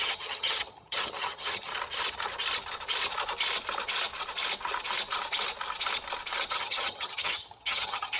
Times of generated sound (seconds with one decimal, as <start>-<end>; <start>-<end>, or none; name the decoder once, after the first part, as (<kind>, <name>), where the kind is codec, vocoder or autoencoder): 0.0-1.7 (vocoder, HiFi-GAN); 6.5-8.2